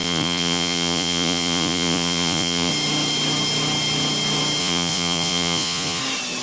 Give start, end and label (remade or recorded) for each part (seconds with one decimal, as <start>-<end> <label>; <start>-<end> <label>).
0.0-2.7 remade; 2.7-4.6 recorded; 4.6-6.0 remade; 6.0-6.4 recorded